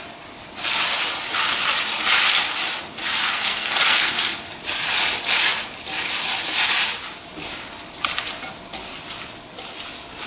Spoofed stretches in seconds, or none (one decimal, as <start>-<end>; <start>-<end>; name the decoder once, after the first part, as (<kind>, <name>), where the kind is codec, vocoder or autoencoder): 3.2-4.3 (codec, SNAC)